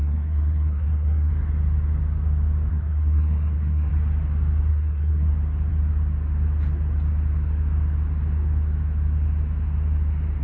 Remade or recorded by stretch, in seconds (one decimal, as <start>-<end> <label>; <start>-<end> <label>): 0.0-1.3 remade; 1.3-2.7 recorded; 2.7-3.9 remade; 3.9-4.7 recorded; 4.7-5.3 remade; 5.3-10.4 recorded